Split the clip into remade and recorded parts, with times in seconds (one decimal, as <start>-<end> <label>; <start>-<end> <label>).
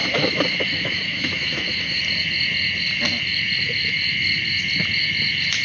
0.0-2.0 remade; 2.0-5.6 recorded